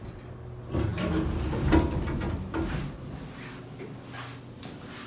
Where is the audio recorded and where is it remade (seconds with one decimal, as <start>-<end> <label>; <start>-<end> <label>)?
0.0-5.1 recorded